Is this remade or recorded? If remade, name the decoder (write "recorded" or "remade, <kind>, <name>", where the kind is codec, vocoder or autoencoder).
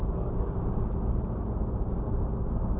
recorded